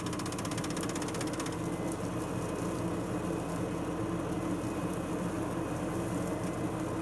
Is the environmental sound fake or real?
real